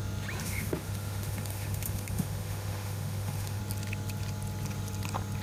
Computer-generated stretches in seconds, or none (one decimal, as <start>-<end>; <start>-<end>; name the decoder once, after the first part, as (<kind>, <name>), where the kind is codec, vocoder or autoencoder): 0.4-3.6 (autoencoder, DAC-VAE)

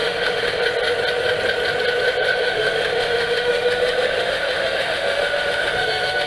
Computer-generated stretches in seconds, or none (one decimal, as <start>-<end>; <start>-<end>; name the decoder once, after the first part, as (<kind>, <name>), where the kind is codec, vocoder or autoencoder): 0.0-0.6 (autoencoder, DAC-VAE); 2.2-6.3

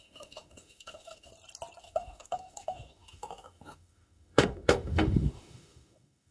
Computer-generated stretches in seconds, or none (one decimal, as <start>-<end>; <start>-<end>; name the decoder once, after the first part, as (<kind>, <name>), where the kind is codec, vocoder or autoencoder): 0.0-1.3 (autoencoder, DAC-VAE); 1.8-6.3

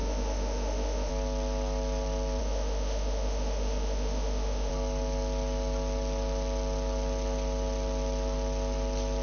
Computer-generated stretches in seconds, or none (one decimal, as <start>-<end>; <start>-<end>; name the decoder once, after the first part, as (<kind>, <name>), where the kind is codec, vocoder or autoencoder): 0.0-1.1 (autoencoder, DAC-VAE); 2.4-4.7

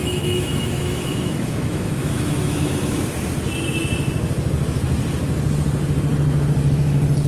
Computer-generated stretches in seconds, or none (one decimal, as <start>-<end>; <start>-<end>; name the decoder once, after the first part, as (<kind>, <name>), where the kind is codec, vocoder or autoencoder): 0.0-3.0 (autoencoder, DAC-VAE)

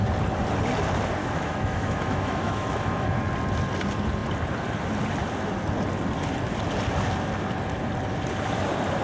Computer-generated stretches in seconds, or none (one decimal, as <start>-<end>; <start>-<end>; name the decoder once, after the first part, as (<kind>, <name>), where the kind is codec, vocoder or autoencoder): 1.2-3.2 (autoencoder, DAC-VAE)

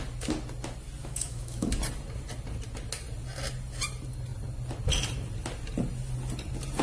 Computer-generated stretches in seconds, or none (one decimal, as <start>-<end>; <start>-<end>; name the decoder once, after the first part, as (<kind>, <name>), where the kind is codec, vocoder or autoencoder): 1.0-1.7 (autoencoder, DAC-VAE)